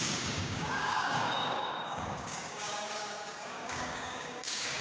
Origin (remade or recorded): remade